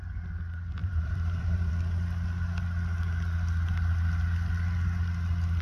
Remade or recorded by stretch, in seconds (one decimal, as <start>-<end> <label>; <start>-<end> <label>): 0.0-0.8 recorded; 0.8-1.7 remade; 1.7-5.6 recorded